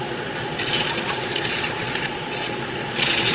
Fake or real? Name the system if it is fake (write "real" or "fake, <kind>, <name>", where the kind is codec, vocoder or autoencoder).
fake, vocoder, Vocos